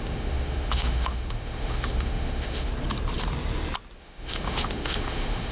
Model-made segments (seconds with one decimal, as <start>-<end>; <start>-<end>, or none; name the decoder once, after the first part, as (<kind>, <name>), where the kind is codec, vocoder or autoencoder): 0.0-2.7 (autoencoder, DAC-VAE); 4.0-5.5